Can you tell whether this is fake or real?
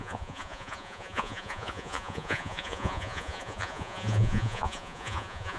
fake